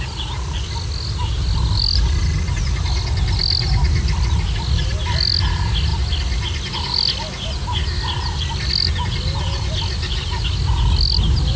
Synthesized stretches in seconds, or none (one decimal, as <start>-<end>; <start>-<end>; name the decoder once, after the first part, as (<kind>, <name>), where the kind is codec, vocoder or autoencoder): none